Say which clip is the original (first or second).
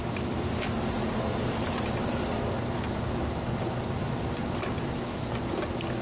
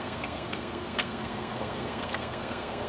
first